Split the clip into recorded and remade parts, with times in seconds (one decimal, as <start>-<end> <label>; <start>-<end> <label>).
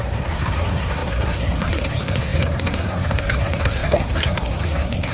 0.0-5.1 remade